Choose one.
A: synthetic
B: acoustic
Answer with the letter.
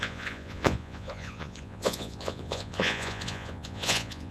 A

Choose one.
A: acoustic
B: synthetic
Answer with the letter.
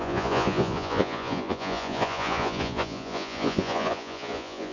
B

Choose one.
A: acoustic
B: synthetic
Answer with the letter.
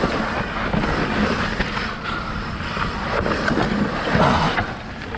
A